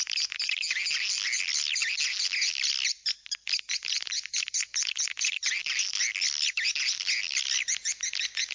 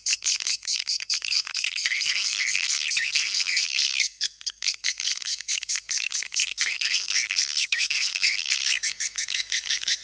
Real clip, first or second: first